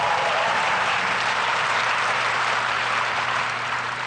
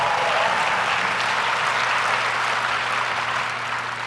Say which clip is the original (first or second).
second